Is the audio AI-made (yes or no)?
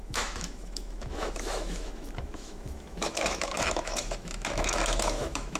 yes